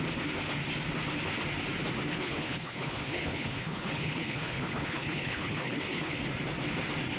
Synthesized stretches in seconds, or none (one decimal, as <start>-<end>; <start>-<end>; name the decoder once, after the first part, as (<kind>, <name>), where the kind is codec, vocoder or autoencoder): 2.1-6.2 (codec, HILCodec)